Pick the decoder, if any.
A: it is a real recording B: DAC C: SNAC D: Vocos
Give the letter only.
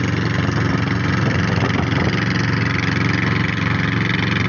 A